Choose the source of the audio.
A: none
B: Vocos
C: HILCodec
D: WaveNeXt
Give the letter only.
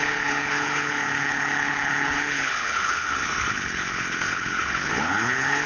C